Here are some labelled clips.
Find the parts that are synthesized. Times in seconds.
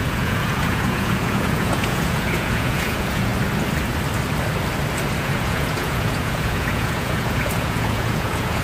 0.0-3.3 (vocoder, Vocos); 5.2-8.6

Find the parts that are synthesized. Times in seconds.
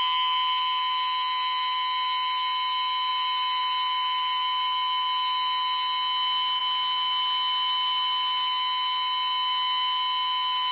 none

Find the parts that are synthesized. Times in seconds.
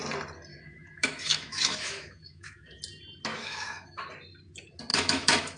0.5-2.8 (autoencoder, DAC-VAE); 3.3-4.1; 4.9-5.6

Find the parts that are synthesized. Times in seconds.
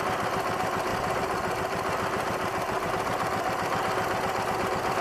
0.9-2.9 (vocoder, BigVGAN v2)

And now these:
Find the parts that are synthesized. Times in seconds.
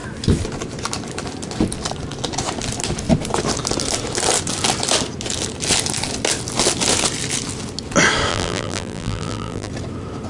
8.3-9.7 (vocoder, BigVGAN v2)